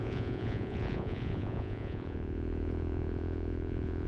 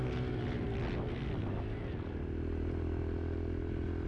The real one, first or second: second